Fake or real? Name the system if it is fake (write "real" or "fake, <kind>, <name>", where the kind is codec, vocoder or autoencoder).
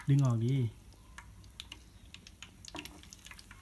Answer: real